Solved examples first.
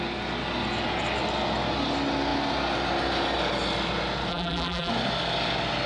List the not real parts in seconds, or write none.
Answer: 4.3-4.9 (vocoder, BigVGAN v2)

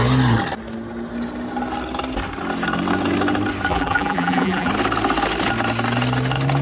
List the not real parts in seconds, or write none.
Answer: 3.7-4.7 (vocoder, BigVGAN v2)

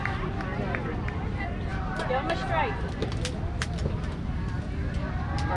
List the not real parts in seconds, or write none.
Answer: none